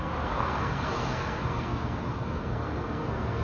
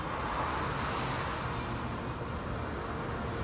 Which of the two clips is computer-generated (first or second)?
first